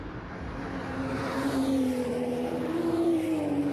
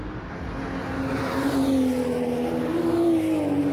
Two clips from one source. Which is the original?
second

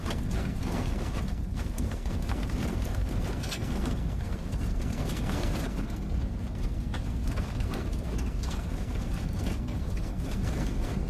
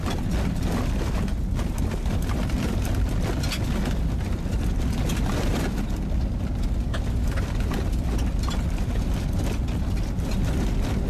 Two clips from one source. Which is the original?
second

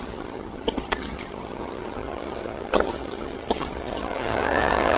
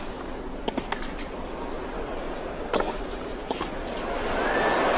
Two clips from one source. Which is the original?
second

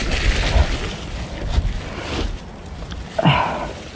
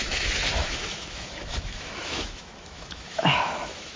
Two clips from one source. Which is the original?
first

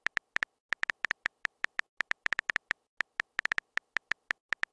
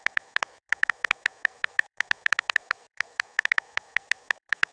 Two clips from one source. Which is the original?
first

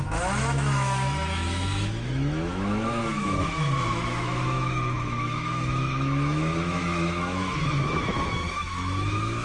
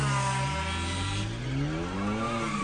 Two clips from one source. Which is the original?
second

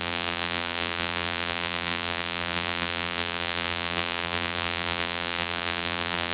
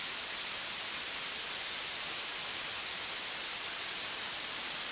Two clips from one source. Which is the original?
second